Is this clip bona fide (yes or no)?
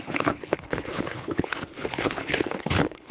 no